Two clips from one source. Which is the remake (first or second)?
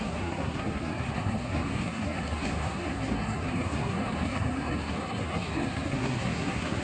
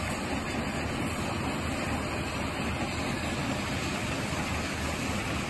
first